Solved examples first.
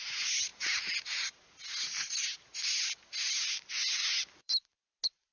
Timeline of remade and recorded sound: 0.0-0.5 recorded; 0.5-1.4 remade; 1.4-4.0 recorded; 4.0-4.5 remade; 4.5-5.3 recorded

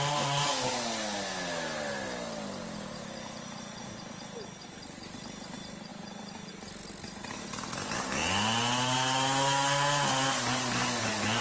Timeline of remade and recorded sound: 0.0-11.4 recorded

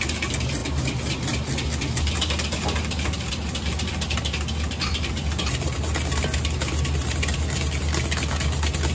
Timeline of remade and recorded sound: 0.0-8.9 recorded

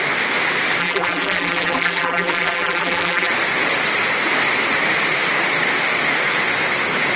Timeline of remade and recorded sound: 0.0-0.8 recorded; 0.8-3.3 remade; 3.3-7.2 recorded

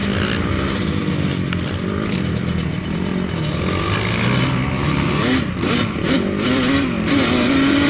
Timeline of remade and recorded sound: 0.0-0.5 recorded; 0.5-3.1 remade; 3.1-4.7 recorded; 4.7-7.9 remade

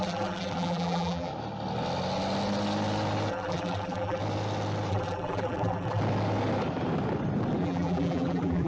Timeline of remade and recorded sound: 0.0-1.3 remade; 1.3-3.3 recorded; 3.3-4.2 remade; 4.2-4.9 recorded; 4.9-6.0 remade; 6.0-7.6 recorded; 7.6-8.7 remade

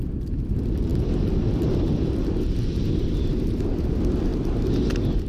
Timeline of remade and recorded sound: 0.0-0.9 recorded; 0.9-2.1 remade; 2.1-5.3 recorded

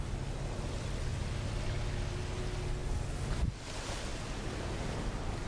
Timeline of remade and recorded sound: 0.0-5.5 recorded